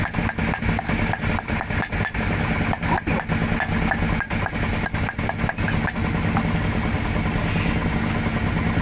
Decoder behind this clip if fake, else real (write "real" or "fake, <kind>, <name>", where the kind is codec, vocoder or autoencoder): real